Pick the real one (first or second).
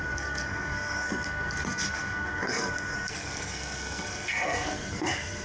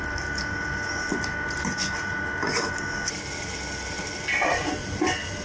second